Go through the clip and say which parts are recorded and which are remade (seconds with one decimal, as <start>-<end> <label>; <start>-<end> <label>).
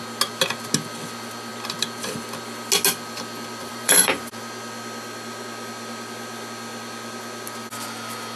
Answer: 0.0-3.6 recorded; 3.6-4.4 remade; 4.4-8.4 recorded